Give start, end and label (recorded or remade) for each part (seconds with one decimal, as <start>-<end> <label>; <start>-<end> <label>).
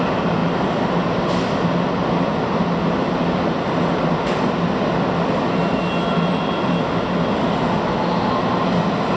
0.0-9.2 recorded